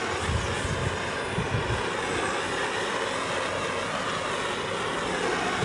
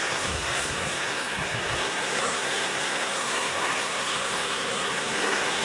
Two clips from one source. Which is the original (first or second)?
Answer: first